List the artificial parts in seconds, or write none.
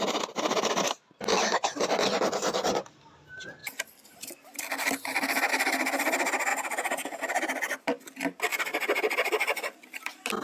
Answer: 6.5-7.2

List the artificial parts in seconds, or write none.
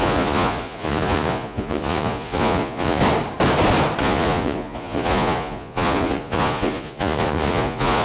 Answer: 0.0-3.0; 4.0-8.0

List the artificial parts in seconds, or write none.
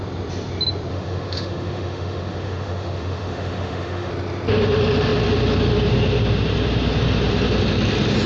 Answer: 0.9-4.1